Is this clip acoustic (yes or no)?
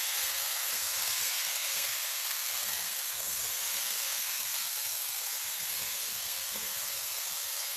no